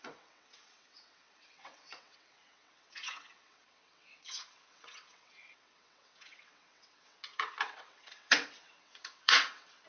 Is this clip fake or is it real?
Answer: fake